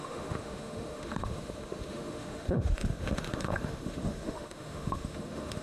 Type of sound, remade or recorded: remade